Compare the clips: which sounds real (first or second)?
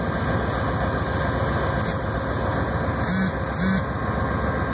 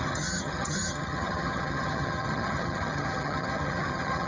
first